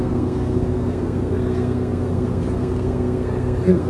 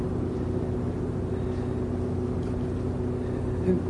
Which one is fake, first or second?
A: first